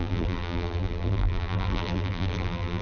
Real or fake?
fake